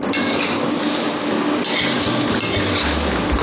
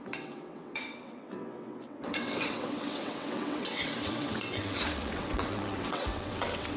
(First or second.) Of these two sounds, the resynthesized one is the second